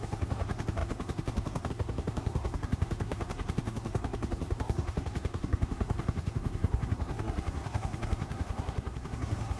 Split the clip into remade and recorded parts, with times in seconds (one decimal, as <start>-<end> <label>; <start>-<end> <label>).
0.0-9.6 remade